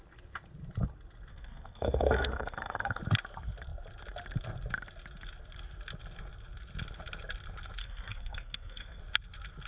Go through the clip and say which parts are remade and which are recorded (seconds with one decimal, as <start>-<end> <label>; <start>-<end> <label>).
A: 0.0-1.3 recorded; 1.3-3.0 remade; 3.0-7.8 recorded; 7.8-9.0 remade; 9.0-9.7 recorded